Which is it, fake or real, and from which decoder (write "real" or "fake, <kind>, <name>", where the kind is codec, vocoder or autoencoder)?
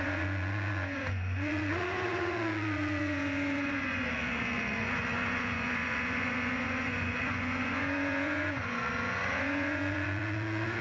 fake, vocoder, Vocos